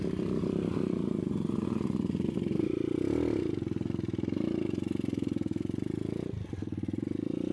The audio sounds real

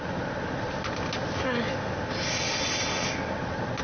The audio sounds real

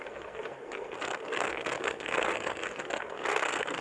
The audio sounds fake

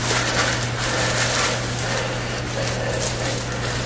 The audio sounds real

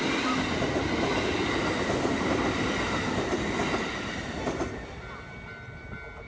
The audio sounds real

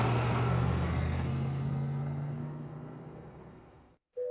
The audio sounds fake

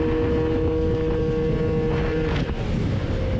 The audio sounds real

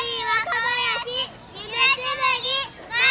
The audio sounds real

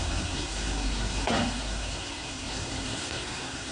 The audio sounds fake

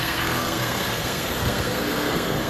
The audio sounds fake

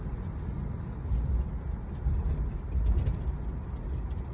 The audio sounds real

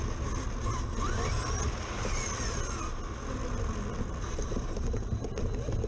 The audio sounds real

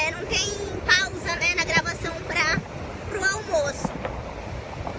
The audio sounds real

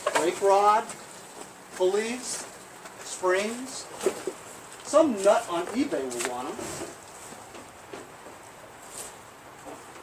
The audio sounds real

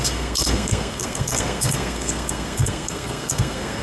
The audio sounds fake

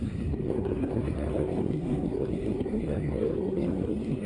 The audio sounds fake